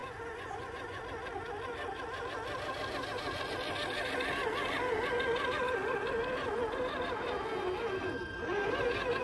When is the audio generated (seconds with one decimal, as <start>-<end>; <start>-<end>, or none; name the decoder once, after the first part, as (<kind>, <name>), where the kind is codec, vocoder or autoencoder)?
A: 0.0-1.0 (vocoder, Vocos)